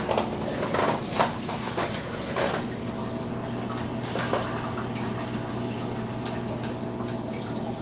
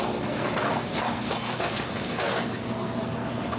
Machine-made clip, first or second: second